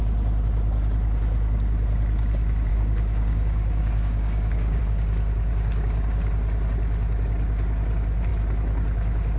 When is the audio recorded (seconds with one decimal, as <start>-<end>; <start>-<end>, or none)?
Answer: 0.0-2.7; 4.8-9.4

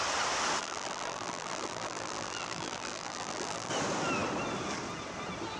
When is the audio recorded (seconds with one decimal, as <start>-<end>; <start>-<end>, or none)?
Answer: 0.0-0.6; 3.7-5.6

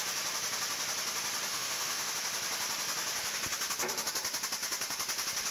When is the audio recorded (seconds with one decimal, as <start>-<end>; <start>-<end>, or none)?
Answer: 0.0-1.5; 2.1-5.5

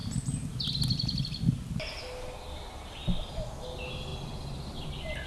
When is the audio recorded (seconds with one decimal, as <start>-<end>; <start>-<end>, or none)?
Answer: 0.0-5.3

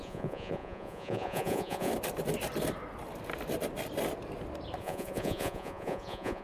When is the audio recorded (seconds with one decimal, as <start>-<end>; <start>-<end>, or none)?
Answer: 1.9-4.8

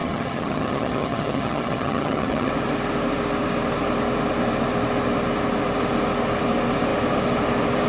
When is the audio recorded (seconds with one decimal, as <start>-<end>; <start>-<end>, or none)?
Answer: 2.5-7.9

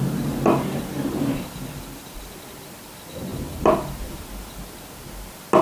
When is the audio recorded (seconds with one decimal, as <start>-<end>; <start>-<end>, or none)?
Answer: 0.0-5.6

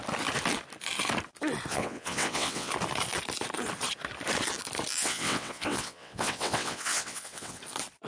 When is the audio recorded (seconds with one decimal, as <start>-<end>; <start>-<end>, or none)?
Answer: 0.0-1.7; 2.7-5.0; 7.6-8.1